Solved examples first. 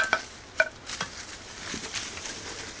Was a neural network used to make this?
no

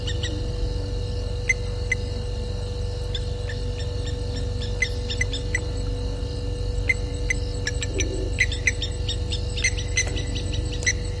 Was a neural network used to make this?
no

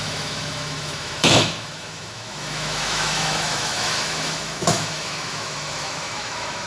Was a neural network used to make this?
yes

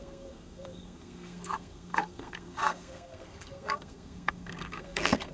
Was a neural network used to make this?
yes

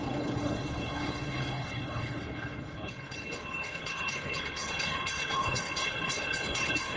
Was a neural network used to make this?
yes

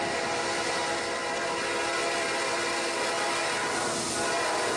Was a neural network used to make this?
no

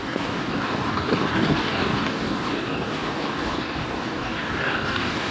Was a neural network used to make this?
yes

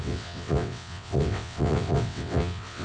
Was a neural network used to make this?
yes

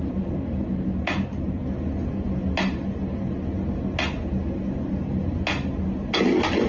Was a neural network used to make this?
no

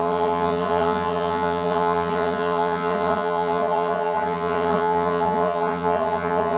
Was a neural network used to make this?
yes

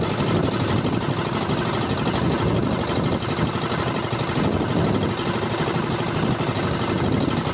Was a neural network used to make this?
no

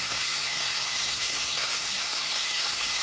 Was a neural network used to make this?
yes